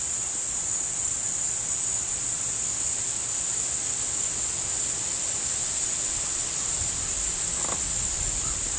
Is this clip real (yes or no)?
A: yes